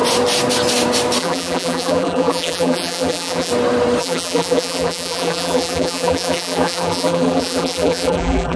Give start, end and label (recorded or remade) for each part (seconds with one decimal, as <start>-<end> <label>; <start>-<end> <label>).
0.0-1.2 recorded; 1.2-3.5 remade; 3.5-4.0 recorded; 4.0-8.6 remade